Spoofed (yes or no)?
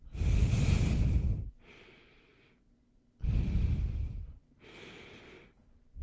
no